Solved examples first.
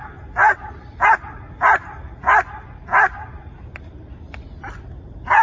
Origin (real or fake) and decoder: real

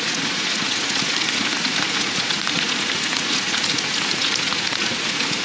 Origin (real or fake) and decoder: fake, vocoder, Vocos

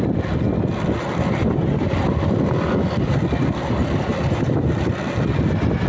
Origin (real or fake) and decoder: real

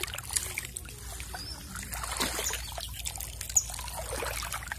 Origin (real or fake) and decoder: real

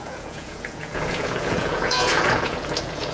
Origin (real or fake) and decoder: fake, vocoder, Vocos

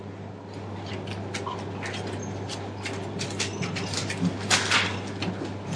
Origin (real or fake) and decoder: real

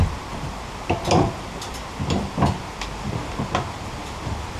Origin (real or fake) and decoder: real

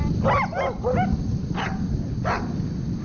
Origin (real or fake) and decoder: real